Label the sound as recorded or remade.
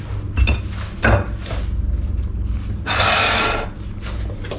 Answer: recorded